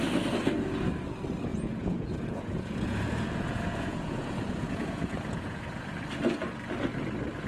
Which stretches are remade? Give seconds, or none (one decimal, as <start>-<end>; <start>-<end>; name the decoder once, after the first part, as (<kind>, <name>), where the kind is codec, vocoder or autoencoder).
1.5-6.0 (vocoder, Vocos)